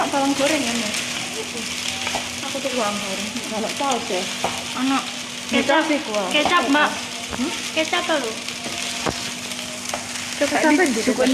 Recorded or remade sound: recorded